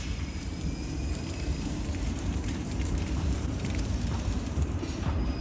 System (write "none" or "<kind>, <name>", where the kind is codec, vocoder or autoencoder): vocoder, BigVGAN v2